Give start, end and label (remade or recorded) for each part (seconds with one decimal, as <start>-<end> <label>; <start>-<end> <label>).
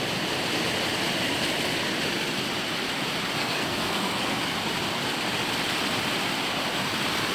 0.0-3.4 recorded; 3.4-4.4 remade; 4.4-7.3 recorded